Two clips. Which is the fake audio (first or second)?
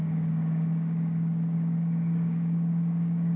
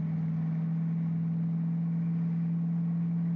first